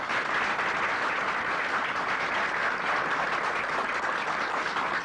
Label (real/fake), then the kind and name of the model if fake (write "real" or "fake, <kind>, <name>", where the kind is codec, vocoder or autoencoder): real